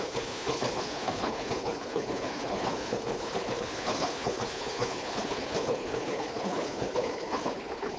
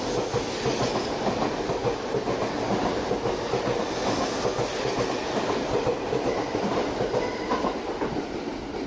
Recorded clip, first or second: second